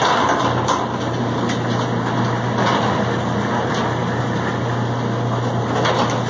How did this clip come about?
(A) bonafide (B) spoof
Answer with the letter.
A